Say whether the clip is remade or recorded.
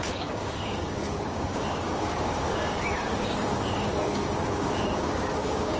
remade